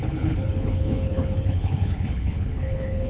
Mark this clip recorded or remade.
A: remade